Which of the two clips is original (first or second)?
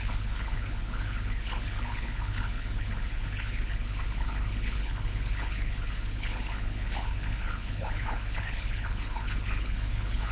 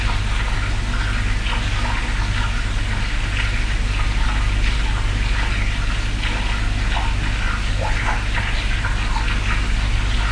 second